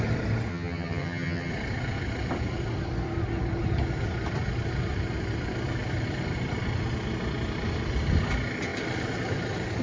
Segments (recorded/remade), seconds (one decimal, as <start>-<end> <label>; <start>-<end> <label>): 0.0-0.5 recorded; 0.5-1.5 remade; 1.5-9.8 recorded